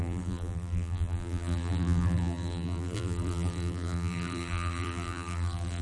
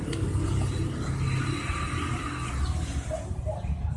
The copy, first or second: first